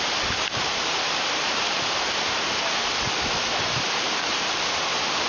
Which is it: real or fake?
real